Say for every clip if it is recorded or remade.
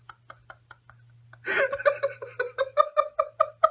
recorded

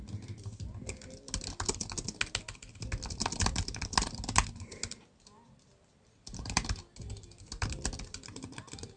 recorded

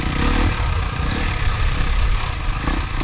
recorded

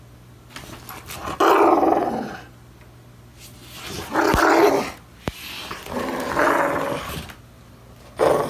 recorded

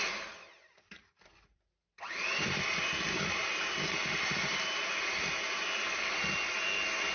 recorded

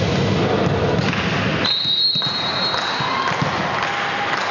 recorded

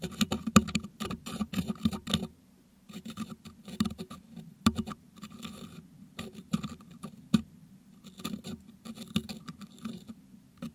remade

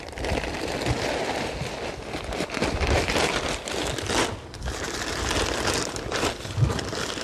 recorded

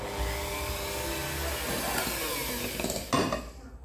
recorded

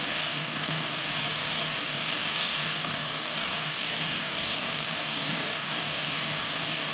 remade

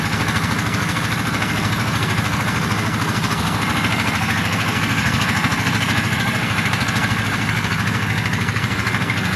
remade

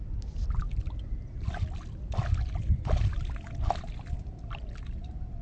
recorded